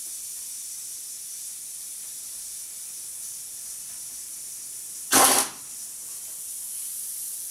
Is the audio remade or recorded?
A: remade